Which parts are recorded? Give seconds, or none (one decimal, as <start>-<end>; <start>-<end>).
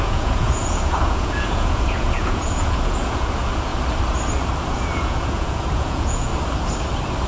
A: 3.7-4.7; 6.3-7.3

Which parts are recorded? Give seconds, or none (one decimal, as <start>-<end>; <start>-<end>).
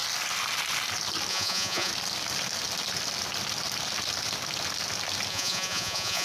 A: 0.0-1.3; 1.9-5.3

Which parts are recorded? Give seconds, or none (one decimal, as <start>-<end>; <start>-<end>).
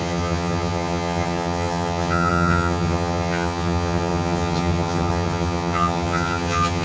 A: none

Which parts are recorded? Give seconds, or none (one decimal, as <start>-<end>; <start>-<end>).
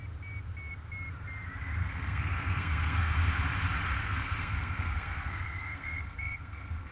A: 0.0-1.8; 3.1-4.0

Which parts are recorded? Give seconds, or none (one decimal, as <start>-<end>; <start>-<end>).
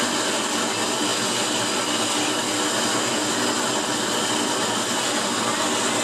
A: 0.0-6.0